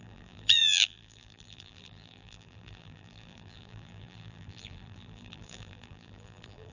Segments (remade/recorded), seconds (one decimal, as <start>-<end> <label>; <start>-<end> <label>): 0.0-6.7 remade